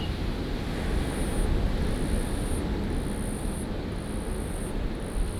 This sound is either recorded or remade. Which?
recorded